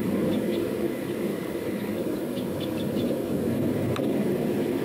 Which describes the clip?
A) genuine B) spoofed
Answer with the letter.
B